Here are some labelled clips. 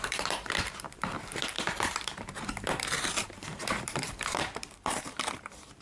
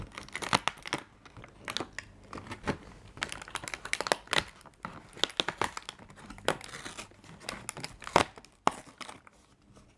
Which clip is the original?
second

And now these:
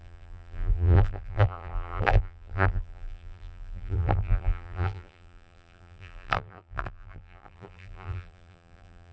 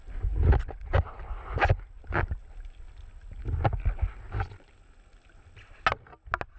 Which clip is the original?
second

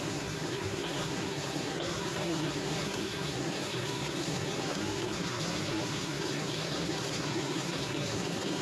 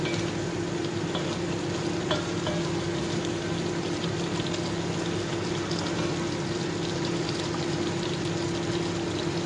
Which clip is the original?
second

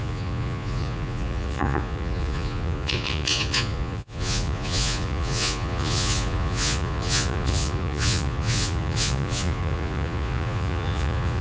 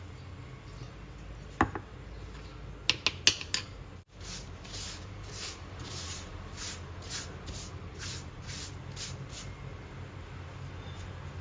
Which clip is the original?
second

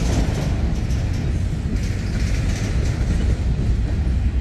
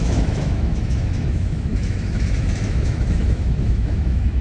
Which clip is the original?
first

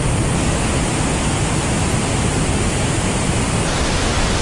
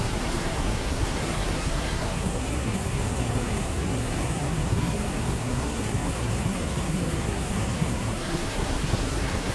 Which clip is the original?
first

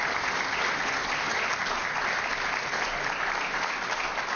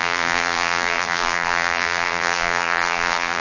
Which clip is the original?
first